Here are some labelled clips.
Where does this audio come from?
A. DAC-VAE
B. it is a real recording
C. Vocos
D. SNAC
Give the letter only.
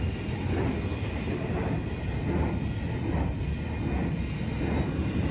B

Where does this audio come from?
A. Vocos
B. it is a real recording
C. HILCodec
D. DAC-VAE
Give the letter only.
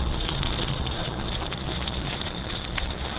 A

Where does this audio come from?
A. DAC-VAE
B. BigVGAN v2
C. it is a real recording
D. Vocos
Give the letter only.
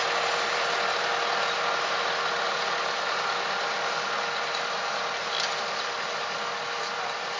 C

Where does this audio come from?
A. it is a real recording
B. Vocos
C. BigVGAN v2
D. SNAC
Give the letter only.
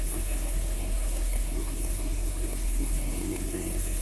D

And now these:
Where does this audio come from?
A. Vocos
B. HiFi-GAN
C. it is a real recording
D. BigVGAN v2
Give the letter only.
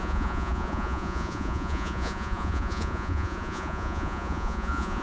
A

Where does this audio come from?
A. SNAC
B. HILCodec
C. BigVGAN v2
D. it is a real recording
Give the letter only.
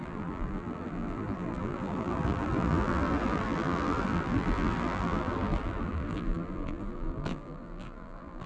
C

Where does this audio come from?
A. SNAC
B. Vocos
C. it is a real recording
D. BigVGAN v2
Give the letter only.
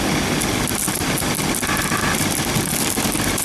C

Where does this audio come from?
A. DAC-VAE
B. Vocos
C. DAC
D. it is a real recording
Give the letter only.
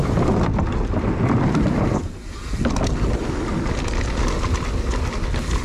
D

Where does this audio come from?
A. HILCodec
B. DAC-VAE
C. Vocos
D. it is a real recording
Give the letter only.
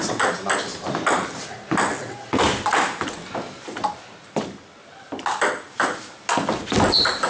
D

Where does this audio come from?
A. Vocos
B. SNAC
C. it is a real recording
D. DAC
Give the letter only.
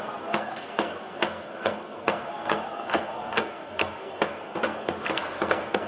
B